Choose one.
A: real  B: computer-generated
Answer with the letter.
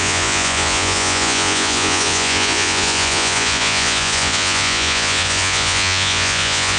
B